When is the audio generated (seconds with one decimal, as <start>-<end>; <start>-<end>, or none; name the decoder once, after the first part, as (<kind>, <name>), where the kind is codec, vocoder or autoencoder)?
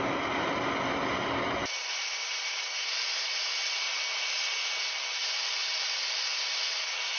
1.6-3.3 (vocoder, BigVGAN v2)